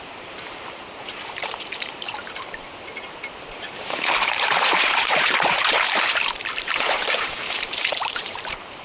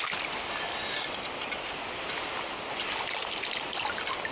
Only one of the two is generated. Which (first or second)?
first